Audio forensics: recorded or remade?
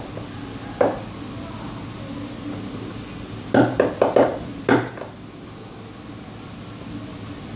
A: recorded